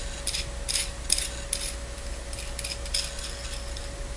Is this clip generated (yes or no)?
no